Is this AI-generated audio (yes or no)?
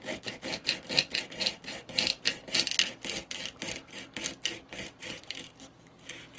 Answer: no